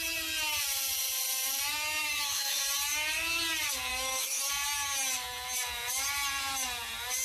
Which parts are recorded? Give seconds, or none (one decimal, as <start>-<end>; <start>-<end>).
0.0-2.0; 2.6-3.9; 4.4-7.2